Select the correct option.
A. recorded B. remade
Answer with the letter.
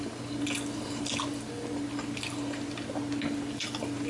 A